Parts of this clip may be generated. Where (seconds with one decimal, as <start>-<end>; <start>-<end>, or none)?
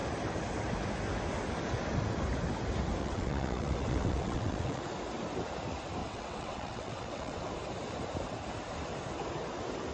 3.0-4.8; 6.0-7.5